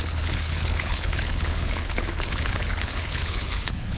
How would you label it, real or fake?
fake